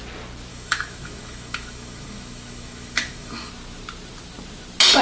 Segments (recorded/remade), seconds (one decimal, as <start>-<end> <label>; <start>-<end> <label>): 0.0-0.5 recorded; 0.5-3.5 remade; 3.5-5.0 recorded